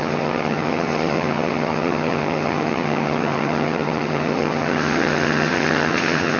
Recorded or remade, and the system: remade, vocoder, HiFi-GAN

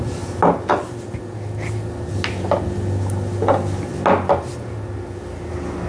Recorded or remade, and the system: recorded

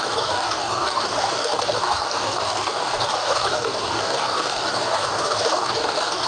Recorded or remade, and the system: remade, codec, DAC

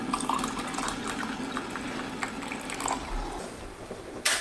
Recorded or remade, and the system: recorded